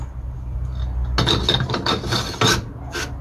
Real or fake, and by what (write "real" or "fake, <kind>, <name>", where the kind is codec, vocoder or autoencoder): real